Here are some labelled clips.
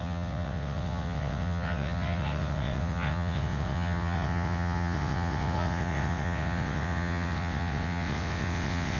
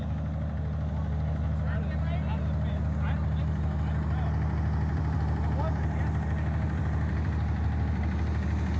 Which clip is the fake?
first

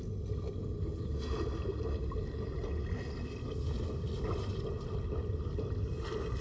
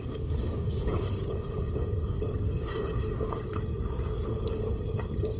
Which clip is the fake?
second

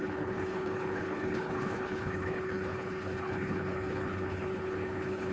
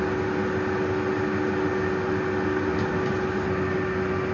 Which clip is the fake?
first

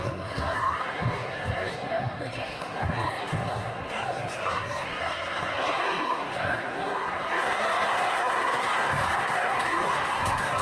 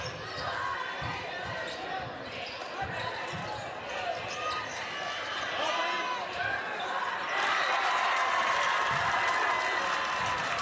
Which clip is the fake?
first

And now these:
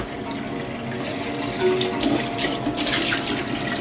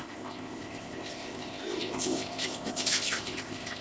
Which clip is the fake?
second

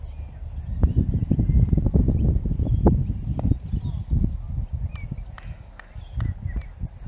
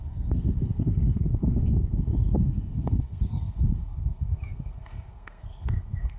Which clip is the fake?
second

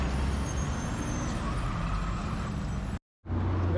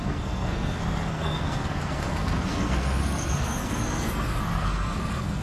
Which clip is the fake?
second